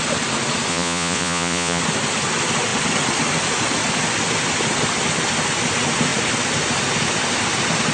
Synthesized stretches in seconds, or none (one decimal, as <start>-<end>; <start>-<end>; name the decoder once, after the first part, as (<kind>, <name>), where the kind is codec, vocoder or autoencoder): 0.7-1.8 (vocoder, Vocos)

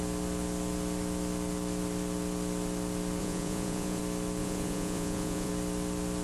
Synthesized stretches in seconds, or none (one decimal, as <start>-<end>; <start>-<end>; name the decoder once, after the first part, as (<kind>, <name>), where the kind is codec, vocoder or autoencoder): 3.2-4.0 (vocoder, Vocos); 4.4-5.5

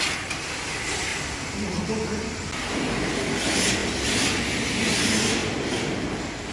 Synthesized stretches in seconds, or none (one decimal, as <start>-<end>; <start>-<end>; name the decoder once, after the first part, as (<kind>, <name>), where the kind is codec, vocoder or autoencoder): none

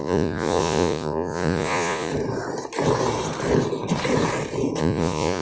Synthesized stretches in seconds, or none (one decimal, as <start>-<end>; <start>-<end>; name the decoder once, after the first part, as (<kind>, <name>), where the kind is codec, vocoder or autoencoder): 0.0-2.1 (vocoder, Vocos); 4.8-5.4

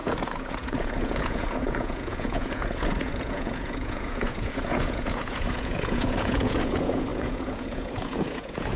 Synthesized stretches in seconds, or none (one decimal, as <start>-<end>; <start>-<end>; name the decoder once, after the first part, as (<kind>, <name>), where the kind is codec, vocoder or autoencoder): 0.0-8.8 (vocoder, Vocos)